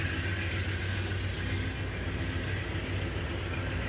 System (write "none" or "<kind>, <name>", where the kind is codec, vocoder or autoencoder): none